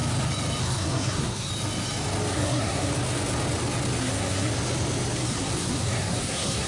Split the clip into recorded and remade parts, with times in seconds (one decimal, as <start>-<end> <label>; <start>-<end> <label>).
0.0-0.6 recorded; 0.6-1.5 remade; 1.5-2.3 recorded; 2.3-2.9 remade; 2.9-4.0 recorded; 4.0-4.5 remade; 4.5-5.2 recorded; 5.2-6.7 remade